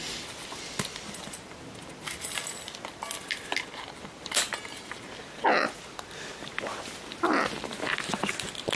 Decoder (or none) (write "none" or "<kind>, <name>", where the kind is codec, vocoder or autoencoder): none